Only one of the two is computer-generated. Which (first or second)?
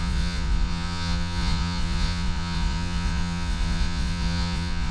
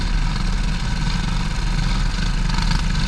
first